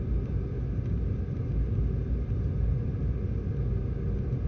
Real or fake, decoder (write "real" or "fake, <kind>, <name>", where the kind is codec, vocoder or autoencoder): real